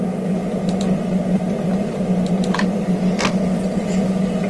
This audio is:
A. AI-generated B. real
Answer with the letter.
B